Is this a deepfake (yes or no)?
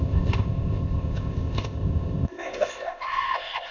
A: yes